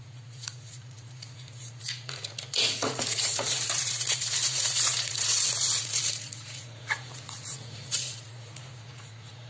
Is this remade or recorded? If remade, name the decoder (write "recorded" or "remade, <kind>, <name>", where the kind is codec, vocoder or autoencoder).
remade, vocoder, Vocos